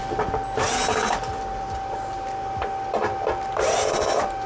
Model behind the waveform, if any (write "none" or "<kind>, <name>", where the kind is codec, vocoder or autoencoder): none